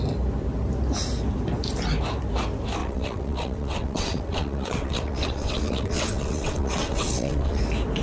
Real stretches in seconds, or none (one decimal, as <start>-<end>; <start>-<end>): 0.0-2.8; 7.6-8.0